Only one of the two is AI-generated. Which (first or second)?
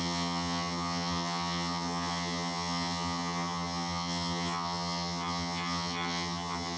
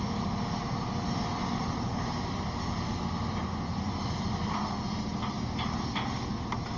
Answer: first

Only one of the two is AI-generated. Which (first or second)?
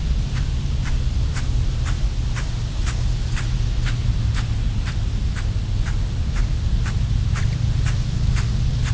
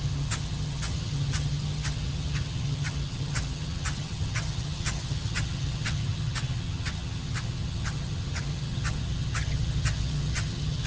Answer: second